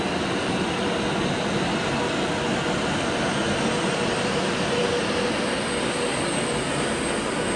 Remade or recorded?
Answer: recorded